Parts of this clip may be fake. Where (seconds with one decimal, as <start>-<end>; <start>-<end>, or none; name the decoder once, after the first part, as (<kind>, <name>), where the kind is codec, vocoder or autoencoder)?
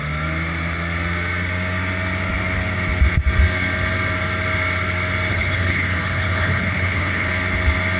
5.3-7.3 (codec, HILCodec)